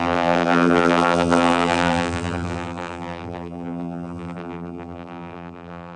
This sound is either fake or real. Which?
fake